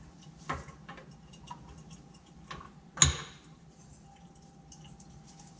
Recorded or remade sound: recorded